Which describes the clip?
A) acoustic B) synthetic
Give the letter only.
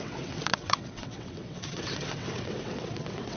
B